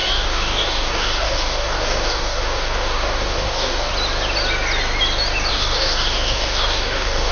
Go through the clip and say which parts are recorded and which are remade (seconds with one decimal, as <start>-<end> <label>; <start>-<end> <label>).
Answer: 0.0-3.9 remade; 3.9-5.5 recorded; 5.5-7.3 remade